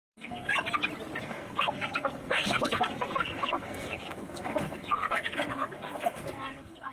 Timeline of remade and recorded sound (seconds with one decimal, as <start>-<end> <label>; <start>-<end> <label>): 0.0-0.5 remade; 0.5-1.2 recorded; 1.2-6.9 remade